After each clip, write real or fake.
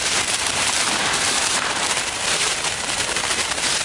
fake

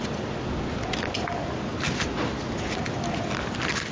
real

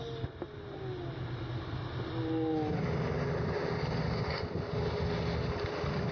real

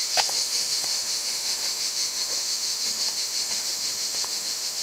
fake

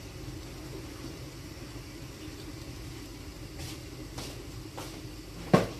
real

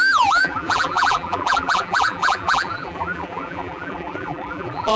fake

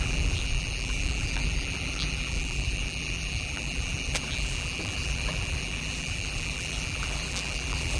fake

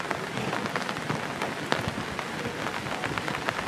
real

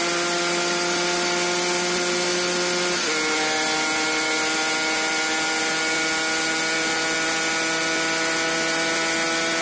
real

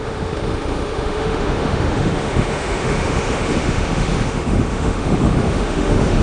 fake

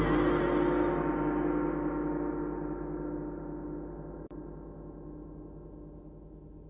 real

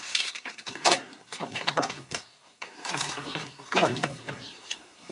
fake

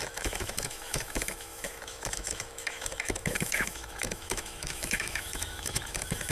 fake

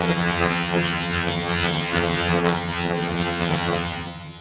fake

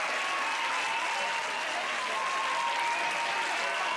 real